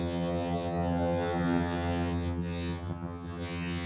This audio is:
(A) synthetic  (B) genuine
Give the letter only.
A